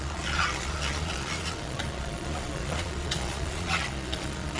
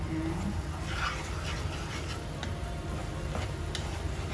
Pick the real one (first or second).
second